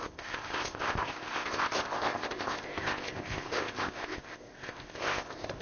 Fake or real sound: fake